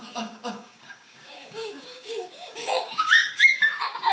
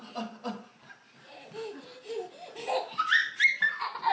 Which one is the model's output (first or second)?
first